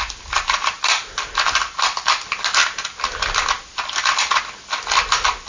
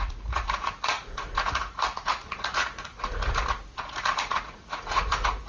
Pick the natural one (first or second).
first